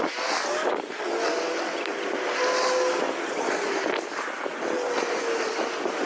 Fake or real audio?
real